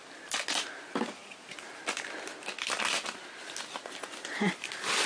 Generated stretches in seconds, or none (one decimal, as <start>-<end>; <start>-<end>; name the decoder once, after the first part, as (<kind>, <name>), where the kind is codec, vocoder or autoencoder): none